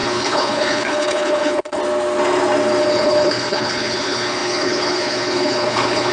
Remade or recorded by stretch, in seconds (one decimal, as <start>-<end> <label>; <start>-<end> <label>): 0.0-1.8 remade; 1.8-2.8 recorded; 2.8-6.1 remade